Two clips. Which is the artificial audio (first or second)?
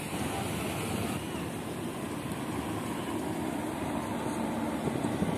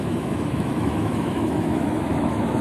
second